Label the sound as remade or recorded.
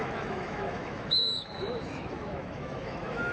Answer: remade